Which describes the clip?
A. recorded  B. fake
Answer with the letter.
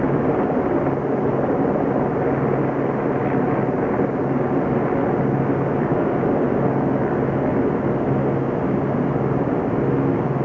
A